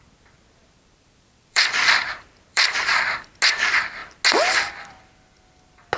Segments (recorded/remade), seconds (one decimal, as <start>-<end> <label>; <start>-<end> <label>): 0.0-0.6 recorded; 0.6-2.8 remade; 2.8-6.0 recorded